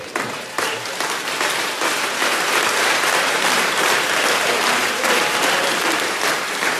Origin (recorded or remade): remade